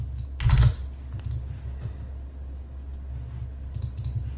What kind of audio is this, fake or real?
real